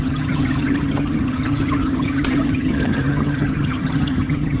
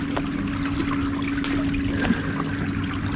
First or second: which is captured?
second